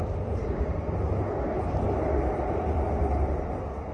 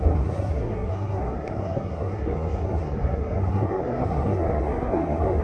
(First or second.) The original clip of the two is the first